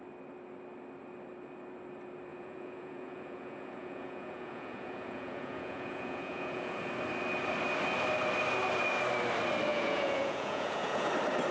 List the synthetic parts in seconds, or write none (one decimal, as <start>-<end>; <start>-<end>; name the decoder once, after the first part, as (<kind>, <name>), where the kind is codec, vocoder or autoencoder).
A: 2.3-6.8 (vocoder, Vocos); 9.7-11.1